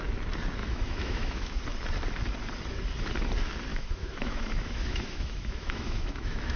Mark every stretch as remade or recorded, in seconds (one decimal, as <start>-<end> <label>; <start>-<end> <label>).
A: 0.0-0.6 recorded; 0.6-1.6 remade; 1.6-3.7 recorded; 3.7-6.6 remade